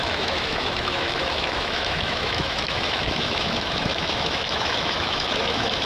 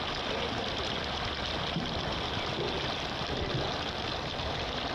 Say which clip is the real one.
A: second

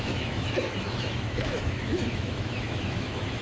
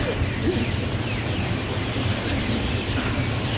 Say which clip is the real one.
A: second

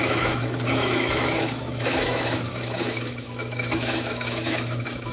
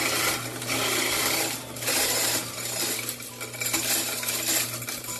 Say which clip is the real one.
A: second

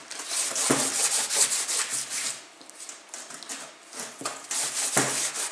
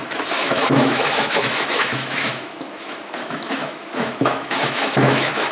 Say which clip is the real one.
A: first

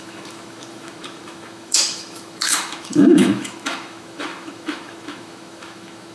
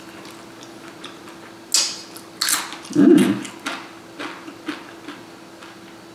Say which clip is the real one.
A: second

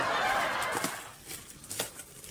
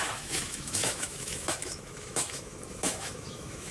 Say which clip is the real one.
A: first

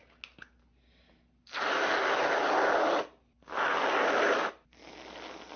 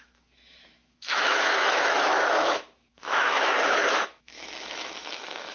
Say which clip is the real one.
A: first